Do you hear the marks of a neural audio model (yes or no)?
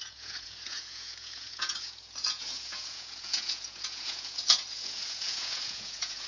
yes